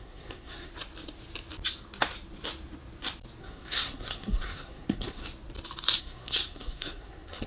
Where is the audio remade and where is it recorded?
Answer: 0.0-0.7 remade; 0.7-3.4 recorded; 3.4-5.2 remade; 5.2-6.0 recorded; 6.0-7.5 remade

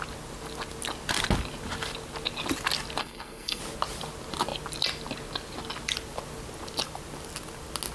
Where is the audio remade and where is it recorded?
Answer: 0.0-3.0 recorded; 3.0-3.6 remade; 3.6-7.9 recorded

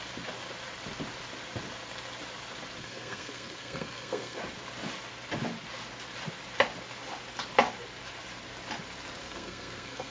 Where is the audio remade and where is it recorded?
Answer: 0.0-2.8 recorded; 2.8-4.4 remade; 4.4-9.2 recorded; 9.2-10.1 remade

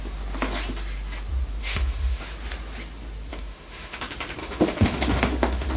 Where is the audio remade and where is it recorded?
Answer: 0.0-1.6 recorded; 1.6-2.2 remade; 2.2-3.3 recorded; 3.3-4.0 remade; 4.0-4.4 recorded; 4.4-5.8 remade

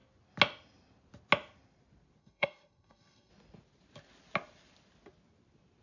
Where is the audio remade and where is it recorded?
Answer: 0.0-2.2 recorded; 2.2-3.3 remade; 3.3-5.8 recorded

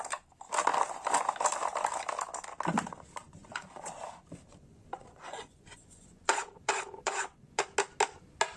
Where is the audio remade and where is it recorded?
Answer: 0.0-3.2 recorded; 3.2-4.0 remade; 4.0-4.5 recorded; 4.5-7.6 remade; 7.6-8.6 recorded

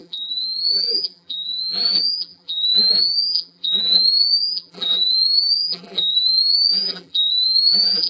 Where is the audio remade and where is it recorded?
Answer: 0.0-8.1 remade